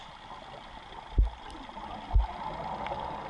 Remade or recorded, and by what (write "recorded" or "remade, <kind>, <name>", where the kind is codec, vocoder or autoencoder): recorded